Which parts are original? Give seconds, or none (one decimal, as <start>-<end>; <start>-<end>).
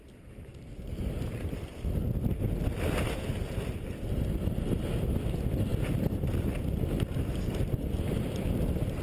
0.0-9.0